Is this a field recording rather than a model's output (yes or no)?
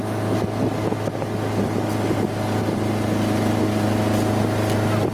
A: yes